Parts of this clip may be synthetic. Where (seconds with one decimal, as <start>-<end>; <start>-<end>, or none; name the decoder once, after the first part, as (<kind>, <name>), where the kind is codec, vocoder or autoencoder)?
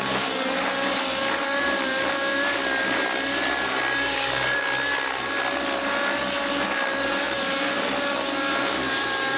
none